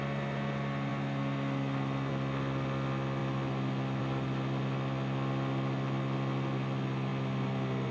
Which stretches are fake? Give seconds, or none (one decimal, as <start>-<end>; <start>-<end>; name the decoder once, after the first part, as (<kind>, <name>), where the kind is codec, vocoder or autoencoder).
none